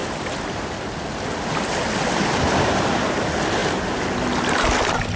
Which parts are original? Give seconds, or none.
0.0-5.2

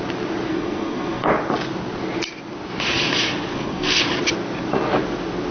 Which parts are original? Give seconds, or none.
0.0-0.5; 1.3-3.5; 4.0-5.5

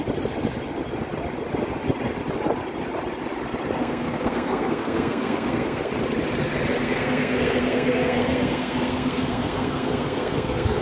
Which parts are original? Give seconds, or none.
0.0-3.8; 5.9-6.8

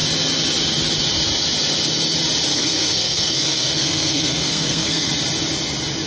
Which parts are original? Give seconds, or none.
0.0-2.5; 5.1-6.1

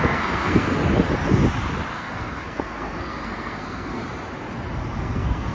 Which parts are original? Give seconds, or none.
0.8-1.9; 4.0-5.0

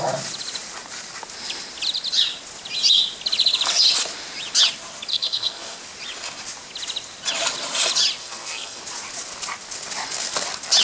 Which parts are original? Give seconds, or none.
0.0-5.1; 5.8-8.2; 8.8-10.8

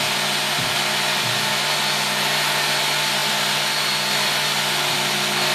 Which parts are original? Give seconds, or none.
0.0-5.5